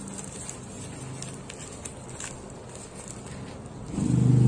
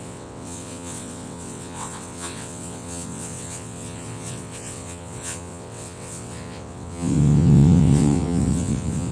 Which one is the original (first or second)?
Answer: first